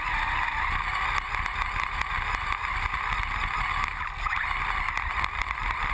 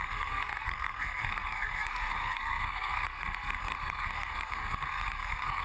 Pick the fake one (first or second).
second